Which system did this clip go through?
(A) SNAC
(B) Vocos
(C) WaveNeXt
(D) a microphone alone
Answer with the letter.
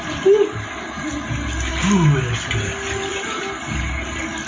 D